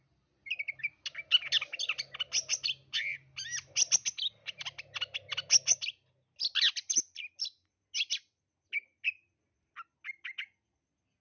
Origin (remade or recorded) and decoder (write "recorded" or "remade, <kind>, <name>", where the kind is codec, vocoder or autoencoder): recorded